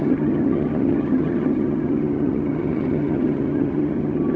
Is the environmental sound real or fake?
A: fake